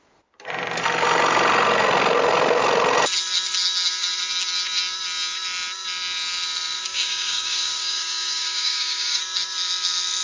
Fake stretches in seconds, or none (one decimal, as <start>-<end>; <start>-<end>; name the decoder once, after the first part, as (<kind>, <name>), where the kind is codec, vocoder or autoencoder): 6.8-9.2 (codec, DAC)